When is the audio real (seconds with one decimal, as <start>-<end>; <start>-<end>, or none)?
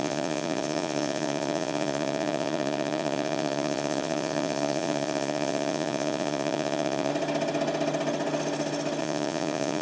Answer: 7.1-9.0